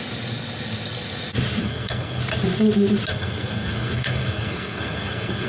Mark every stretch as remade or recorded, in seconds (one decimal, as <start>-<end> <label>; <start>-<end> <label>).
0.0-1.6 recorded; 1.6-2.2 remade; 2.2-3.1 recorded; 3.1-5.5 remade